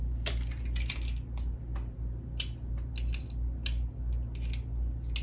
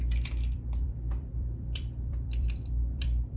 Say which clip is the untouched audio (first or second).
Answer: first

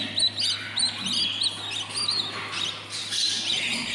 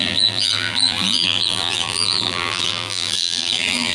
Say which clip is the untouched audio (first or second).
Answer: first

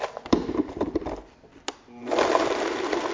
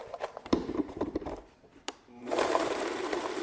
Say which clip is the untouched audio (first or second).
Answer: first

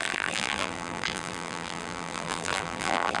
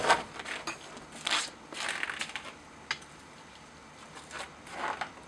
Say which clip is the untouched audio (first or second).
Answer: second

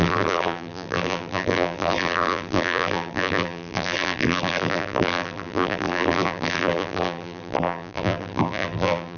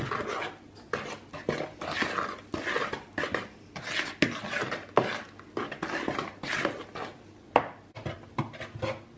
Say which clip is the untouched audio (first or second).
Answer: second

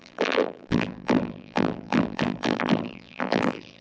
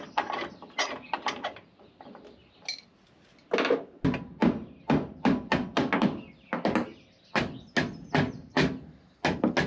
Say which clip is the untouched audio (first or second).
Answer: second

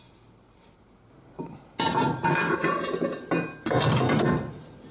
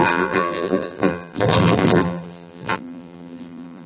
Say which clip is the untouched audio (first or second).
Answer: first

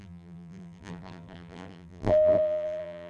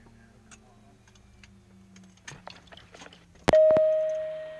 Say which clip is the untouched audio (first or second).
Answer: second